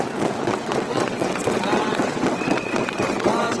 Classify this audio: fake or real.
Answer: fake